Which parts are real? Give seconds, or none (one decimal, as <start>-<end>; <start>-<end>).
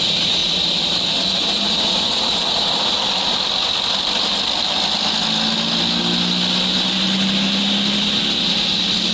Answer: 0.0-0.4; 4.6-9.1